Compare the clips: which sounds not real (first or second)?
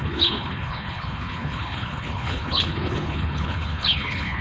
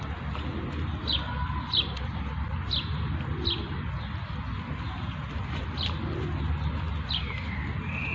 first